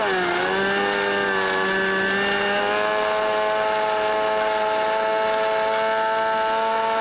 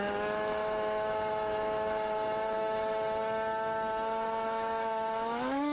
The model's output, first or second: second